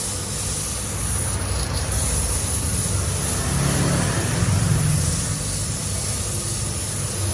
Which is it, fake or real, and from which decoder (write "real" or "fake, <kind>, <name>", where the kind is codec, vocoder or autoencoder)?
real